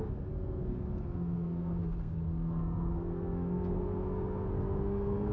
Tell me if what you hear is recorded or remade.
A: remade